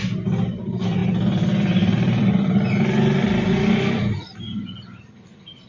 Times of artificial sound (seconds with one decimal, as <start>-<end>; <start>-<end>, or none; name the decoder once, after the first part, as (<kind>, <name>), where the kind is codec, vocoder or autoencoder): 1.0-4.4 (vocoder, BigVGAN v2)